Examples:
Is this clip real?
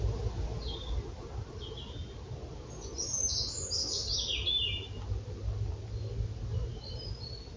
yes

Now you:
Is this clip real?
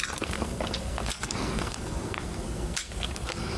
no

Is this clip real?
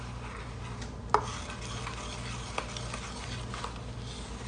yes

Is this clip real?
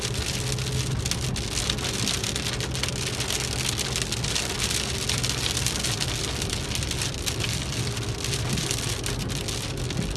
yes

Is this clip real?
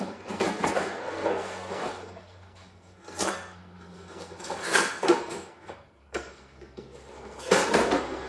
no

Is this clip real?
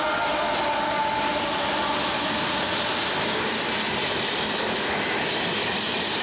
yes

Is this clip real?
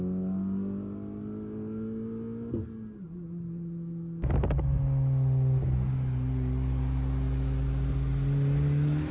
yes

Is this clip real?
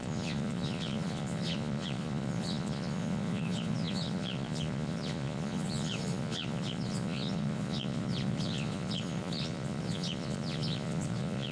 no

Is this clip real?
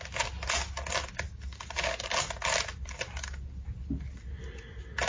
yes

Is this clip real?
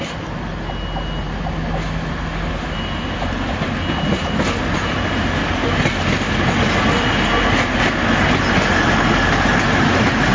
yes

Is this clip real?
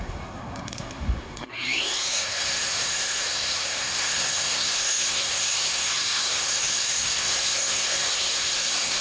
no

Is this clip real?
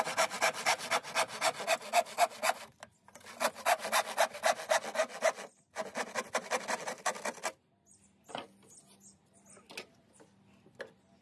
yes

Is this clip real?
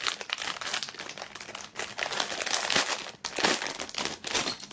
yes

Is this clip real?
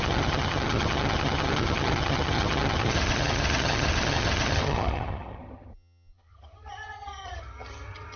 no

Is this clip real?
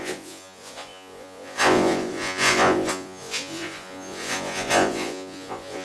no